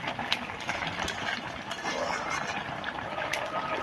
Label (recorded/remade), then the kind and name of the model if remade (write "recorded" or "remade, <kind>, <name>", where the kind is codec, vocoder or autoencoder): recorded